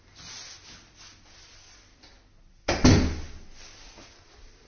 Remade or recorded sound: recorded